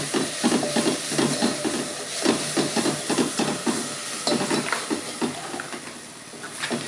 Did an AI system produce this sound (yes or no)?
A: no